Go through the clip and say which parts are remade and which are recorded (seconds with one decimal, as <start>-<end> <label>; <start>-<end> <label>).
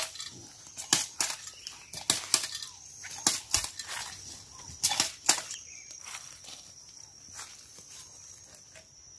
0.0-9.2 recorded